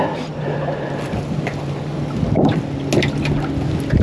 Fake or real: real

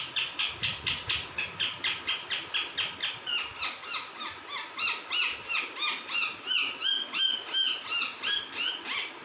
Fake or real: real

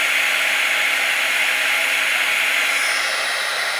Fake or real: real